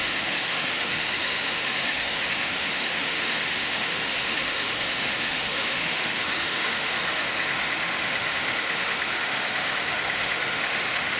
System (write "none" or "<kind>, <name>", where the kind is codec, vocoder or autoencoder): autoencoder, DAC-VAE